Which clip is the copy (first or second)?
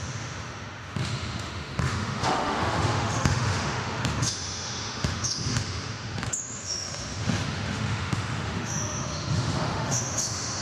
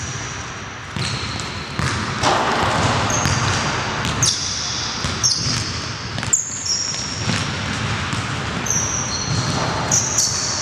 first